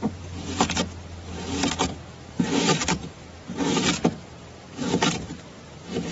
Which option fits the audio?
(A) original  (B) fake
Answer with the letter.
A